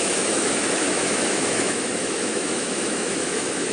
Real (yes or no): no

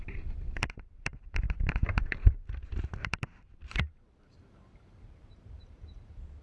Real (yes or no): no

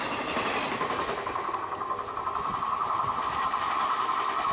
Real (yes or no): yes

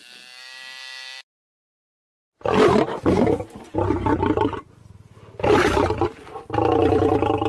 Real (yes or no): yes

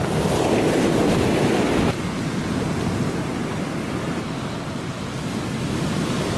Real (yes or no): yes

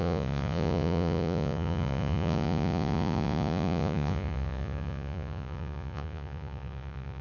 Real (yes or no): no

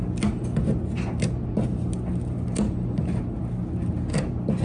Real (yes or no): yes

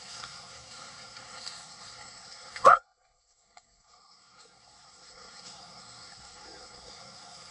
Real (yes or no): no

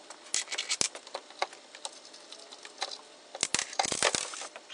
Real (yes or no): yes